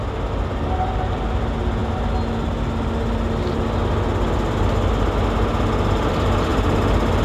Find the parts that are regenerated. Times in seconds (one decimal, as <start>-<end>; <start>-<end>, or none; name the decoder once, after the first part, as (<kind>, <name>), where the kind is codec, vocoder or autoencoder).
none